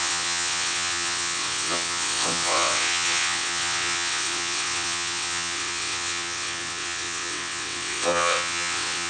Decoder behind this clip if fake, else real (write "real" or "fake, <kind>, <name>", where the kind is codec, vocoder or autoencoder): fake, vocoder, WaveNeXt